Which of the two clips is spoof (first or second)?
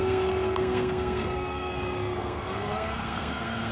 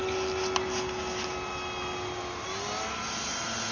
first